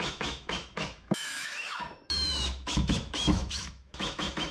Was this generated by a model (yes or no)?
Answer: yes